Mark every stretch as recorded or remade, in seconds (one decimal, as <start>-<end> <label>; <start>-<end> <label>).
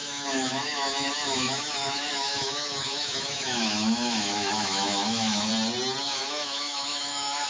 0.0-5.5 remade; 5.5-6.0 recorded; 6.0-7.5 remade